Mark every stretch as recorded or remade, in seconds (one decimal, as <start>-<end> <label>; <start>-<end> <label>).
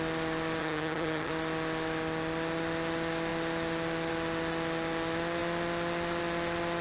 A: 0.0-0.6 recorded; 0.6-1.3 remade; 1.3-6.8 recorded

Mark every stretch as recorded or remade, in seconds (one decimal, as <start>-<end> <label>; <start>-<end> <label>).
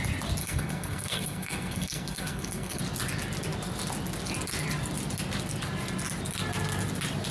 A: 0.0-0.4 recorded; 0.4-2.8 remade; 2.8-7.3 recorded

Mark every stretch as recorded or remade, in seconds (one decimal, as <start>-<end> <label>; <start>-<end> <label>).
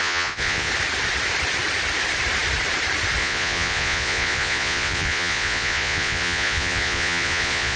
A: 0.0-0.7 remade; 0.7-3.2 recorded; 3.2-7.8 remade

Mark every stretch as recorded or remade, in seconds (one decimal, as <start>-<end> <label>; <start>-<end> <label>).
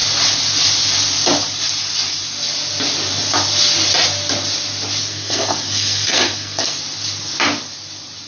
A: 0.0-5.0 recorded; 5.0-6.8 remade; 6.8-8.3 recorded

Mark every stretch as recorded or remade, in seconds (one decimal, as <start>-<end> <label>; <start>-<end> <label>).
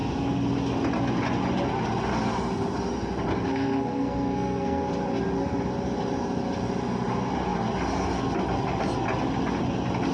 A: 0.0-3.5 recorded; 3.5-4.9 remade; 4.9-10.1 recorded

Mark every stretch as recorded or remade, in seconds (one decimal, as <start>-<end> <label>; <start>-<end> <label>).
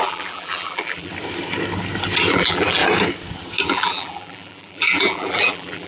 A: 0.0-1.1 remade; 1.1-2.3 recorded; 2.3-2.8 remade; 2.8-3.6 recorded; 3.6-5.9 remade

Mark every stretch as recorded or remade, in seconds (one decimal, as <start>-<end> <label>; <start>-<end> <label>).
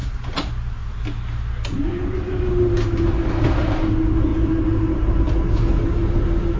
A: 0.0-6.6 recorded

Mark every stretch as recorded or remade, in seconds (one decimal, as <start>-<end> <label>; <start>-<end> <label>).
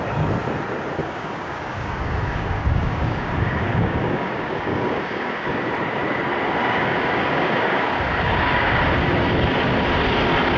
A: 0.0-1.0 recorded; 1.0-5.5 remade; 5.5-6.6 recorded; 6.6-8.8 remade; 8.8-10.6 recorded